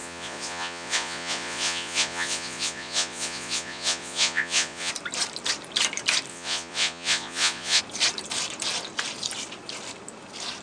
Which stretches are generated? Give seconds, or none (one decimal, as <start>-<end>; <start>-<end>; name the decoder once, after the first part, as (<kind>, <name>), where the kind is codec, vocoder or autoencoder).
0.0-4.9 (vocoder, Vocos); 6.3-7.8